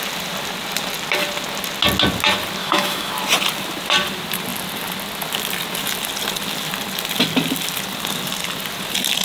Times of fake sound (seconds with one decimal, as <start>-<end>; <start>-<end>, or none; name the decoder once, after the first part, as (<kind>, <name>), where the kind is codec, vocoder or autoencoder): 2.6-3.1 (autoencoder, DAC-VAE)